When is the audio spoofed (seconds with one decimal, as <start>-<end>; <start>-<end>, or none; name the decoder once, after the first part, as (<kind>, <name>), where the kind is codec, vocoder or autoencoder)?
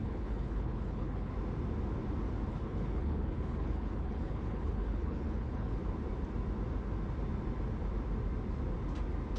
0.0-1.3 (codec, HILCodec); 2.5-5.8